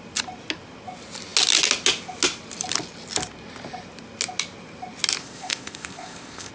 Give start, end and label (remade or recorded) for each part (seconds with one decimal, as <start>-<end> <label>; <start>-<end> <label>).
0.0-5.2 recorded; 5.2-6.5 remade